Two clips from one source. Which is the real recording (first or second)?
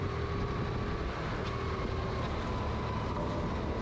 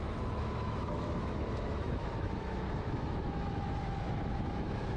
first